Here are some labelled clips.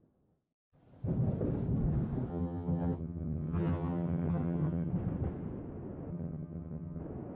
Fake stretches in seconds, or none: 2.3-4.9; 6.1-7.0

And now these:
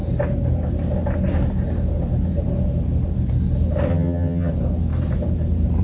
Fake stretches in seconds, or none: 3.9-4.5